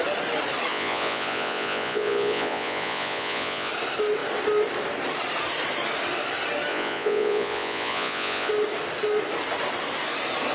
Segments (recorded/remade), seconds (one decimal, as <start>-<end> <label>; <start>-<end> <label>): 0.0-0.7 recorded; 0.7-3.7 remade; 3.7-6.7 recorded; 6.7-8.5 remade; 8.5-10.5 recorded